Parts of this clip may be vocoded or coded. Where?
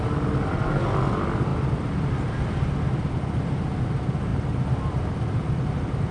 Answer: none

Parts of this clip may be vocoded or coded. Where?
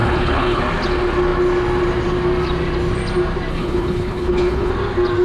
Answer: 0.0-0.6 (codec, HILCodec); 3.5-4.7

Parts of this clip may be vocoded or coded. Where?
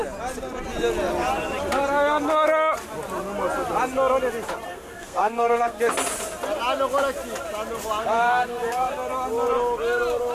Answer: 4.7-5.8 (codec, SNAC); 8.0-8.9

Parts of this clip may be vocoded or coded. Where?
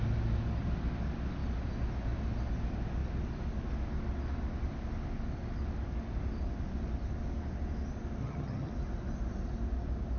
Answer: 8.2-8.7 (vocoder, HiFi-GAN)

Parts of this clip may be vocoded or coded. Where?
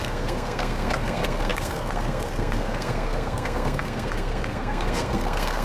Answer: 0.0-5.6 (codec, SNAC)